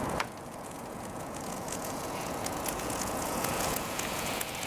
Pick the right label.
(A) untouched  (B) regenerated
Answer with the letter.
B